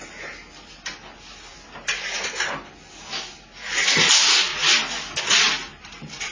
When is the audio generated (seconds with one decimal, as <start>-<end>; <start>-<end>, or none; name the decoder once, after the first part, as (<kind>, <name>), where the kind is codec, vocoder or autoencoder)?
none